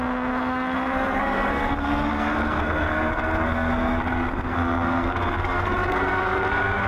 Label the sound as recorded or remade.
remade